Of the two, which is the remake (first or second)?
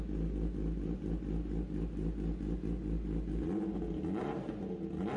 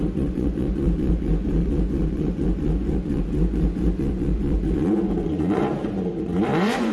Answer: second